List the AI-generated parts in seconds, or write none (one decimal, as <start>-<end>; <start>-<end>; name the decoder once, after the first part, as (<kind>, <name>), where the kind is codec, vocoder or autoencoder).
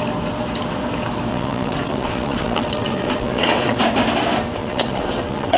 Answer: 1.3-3.8 (vocoder, WaveNeXt); 4.6-5.6